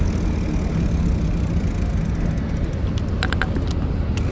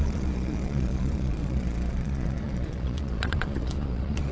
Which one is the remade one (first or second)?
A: second